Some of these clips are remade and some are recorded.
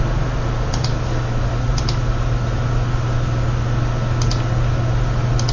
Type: recorded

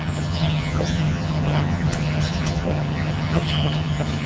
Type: remade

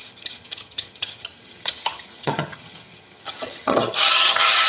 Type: remade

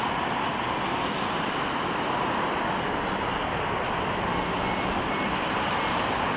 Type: recorded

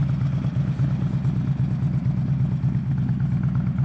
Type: recorded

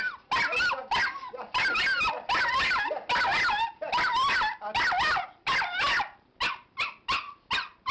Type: recorded